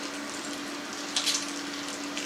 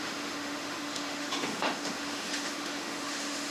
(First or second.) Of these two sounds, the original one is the first